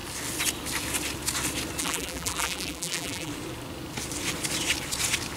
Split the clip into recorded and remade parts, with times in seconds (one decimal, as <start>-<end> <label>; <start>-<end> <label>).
0.0-1.8 recorded; 1.8-3.3 remade; 3.3-5.4 recorded